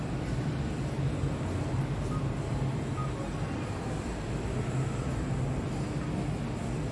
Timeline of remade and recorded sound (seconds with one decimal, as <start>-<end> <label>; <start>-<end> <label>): 0.0-6.9 recorded